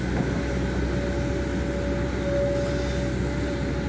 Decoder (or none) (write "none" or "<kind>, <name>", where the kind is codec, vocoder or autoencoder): none